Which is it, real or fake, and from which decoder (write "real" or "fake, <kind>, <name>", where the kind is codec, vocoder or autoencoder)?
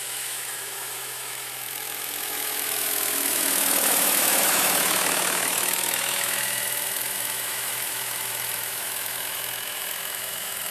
fake, autoencoder, DAC-VAE